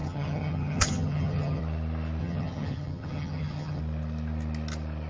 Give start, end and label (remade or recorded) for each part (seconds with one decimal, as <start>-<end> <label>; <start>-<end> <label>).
0.0-1.6 remade; 1.6-2.2 recorded; 2.2-3.8 remade; 3.8-5.1 recorded